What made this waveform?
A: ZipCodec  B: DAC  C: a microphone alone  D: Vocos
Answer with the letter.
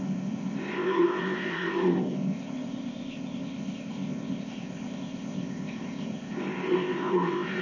A